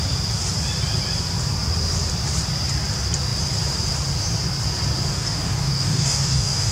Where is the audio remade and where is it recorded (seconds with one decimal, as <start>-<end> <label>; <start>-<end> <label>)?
0.0-5.1 recorded; 5.1-6.7 remade

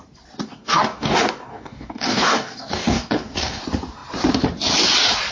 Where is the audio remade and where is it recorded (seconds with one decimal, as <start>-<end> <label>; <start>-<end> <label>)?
0.0-0.4 recorded; 0.4-3.6 remade; 3.6-5.3 recorded

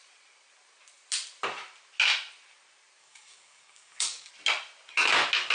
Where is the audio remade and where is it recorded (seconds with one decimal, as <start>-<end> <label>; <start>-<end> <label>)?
0.0-3.0 recorded; 3.0-4.3 remade; 4.3-5.5 recorded

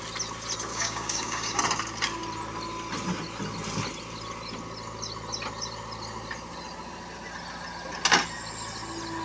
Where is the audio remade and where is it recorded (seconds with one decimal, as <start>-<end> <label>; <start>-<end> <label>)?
0.0-0.7 recorded; 0.7-1.6 remade; 1.6-9.2 recorded

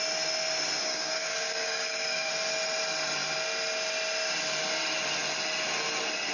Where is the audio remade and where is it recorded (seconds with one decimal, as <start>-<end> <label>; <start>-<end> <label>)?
0.0-0.8 recorded; 0.8-2.3 remade; 2.3-6.3 recorded

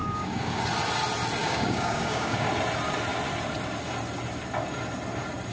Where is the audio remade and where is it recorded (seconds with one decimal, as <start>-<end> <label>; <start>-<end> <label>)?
0.0-0.6 remade; 0.6-1.4 recorded; 1.4-2.5 remade; 2.5-5.5 recorded

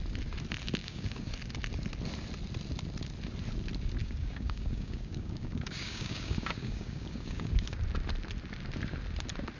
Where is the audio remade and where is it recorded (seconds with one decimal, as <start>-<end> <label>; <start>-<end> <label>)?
0.0-0.8 recorded; 0.8-1.3 remade; 1.3-4.0 recorded; 4.0-7.8 remade; 7.8-9.6 recorded